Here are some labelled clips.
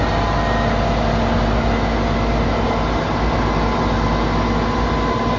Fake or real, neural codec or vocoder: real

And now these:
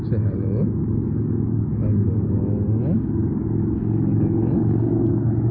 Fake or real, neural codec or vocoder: fake, codec, DAC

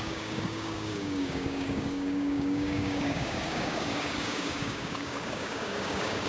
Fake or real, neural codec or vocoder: fake, codec, DAC